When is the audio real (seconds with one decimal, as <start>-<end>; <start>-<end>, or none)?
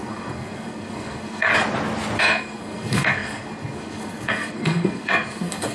1.5-2.2